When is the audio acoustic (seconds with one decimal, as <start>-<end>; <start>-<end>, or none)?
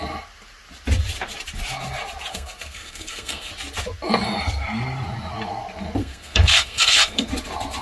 0.0-2.3; 3.5-6.0; 7.3-7.8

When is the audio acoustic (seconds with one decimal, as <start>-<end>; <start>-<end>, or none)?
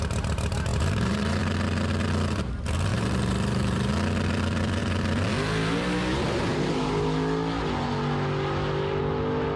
0.0-0.7; 1.4-2.9; 3.9-9.6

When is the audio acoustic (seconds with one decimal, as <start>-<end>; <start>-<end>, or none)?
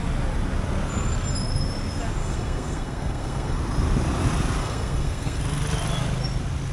0.0-2.2; 3.6-4.6; 5.4-6.7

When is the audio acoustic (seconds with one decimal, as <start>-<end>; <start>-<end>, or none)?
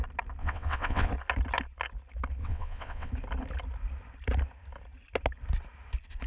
0.0-0.4; 1.1-2.4; 3.1-6.3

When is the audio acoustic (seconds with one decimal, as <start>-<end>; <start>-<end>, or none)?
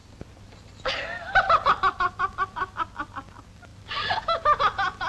0.0-5.1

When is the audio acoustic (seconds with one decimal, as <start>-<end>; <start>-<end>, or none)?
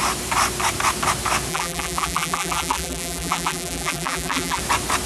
0.0-1.5; 4.6-5.1